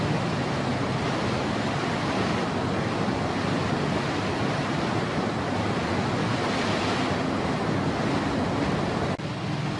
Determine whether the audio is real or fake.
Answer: real